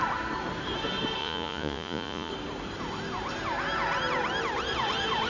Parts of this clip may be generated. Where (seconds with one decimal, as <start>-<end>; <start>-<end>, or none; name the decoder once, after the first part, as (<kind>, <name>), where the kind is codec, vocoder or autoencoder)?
1.2-2.3 (vocoder, Vocos)